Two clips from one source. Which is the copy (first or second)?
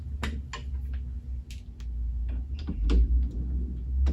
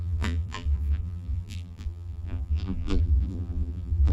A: second